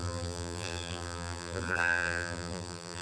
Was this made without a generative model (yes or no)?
no